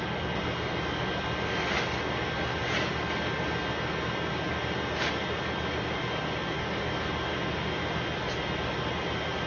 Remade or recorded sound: recorded